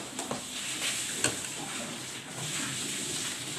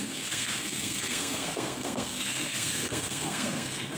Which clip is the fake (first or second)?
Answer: second